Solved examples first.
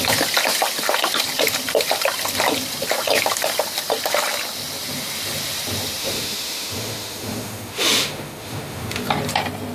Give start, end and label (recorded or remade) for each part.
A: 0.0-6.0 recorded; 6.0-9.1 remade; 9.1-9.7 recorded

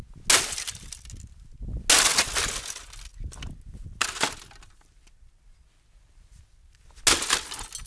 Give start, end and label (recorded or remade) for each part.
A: 0.0-7.9 recorded

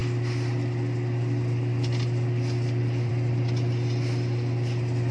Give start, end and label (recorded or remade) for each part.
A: 0.0-5.1 recorded

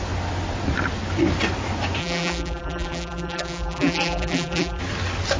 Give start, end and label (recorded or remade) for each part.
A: 0.0-2.0 recorded; 2.0-4.8 remade; 4.8-5.4 recorded